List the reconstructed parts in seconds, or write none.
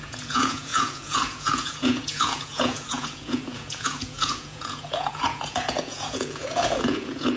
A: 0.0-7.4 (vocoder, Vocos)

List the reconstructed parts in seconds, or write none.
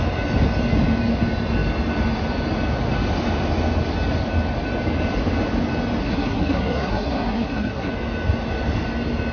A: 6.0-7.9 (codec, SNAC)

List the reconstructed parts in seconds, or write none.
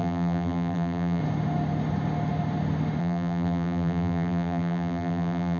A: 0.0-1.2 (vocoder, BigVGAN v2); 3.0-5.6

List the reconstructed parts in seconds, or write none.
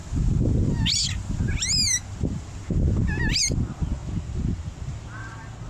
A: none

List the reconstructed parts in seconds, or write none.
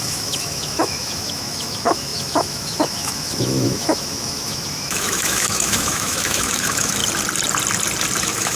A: 0.0-7.0 (autoencoder, DAC-VAE); 8.2-8.6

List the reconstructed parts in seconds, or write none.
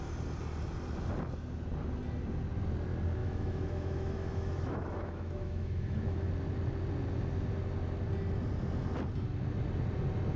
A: 3.2-6.3 (autoencoder, DAC-VAE)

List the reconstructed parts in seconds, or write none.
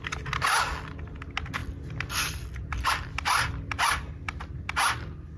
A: none